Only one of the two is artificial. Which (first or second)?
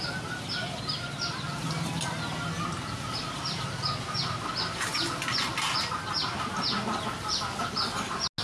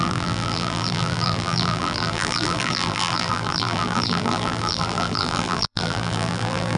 second